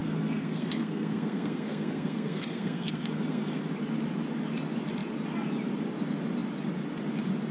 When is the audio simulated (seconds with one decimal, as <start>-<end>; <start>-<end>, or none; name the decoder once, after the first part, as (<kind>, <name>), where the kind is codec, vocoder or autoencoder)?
0.0-3.6 (codec, SNAC)